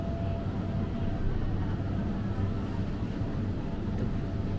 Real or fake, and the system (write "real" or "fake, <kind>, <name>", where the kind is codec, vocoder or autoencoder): real